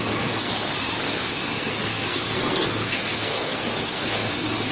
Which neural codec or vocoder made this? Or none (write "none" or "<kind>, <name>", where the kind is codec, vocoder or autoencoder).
codec, SNAC